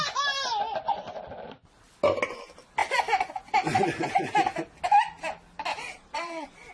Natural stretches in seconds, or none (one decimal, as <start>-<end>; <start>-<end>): 0.0-5.7